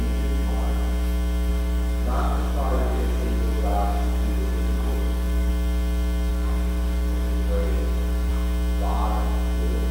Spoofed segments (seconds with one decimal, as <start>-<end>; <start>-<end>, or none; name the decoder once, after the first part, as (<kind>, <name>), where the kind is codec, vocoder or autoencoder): 1.5-5.5 (codec, DAC); 6.3-8.3